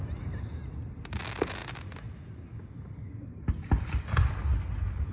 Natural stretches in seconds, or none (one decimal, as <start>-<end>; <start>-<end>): 0.0-5.1